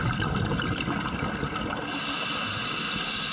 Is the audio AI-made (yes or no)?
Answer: no